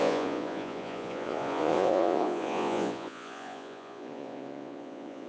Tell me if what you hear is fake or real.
fake